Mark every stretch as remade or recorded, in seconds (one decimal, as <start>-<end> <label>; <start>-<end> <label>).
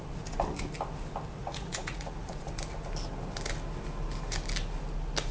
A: 0.0-1.4 recorded; 1.4-2.5 remade; 2.5-5.3 recorded